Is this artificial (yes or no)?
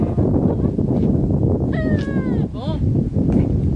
no